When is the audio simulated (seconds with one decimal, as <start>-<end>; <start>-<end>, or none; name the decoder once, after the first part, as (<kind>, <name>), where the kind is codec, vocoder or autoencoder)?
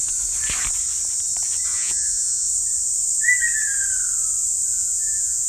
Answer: 1.7-2.5 (vocoder, Vocos); 4.7-5.5